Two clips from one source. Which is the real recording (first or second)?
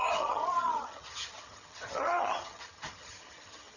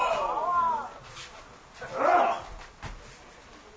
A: second